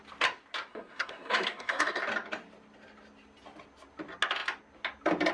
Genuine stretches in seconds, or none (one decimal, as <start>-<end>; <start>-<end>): 0.0-0.7; 2.0-5.3